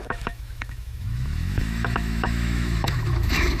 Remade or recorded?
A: remade